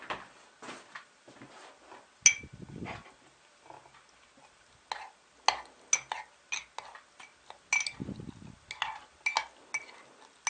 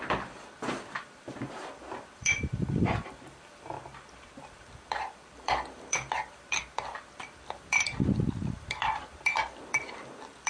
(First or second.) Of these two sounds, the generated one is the second